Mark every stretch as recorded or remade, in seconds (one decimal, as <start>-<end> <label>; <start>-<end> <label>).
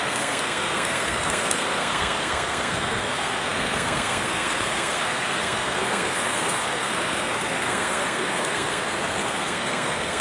0.0-10.2 remade